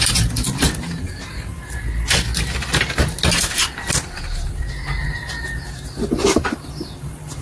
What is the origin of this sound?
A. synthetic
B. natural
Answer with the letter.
B